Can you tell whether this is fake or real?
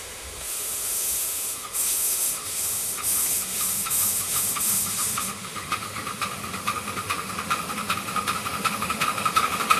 fake